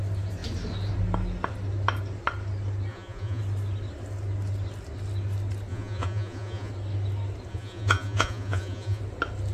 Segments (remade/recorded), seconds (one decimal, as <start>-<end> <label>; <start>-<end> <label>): 0.0-2.9 recorded; 2.9-3.4 remade; 3.4-5.7 recorded; 5.7-6.7 remade; 6.7-7.5 recorded; 7.5-9.0 remade; 9.0-9.5 recorded